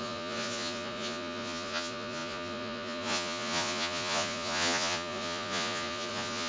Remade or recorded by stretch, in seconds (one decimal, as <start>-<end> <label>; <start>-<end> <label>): 0.0-6.5 remade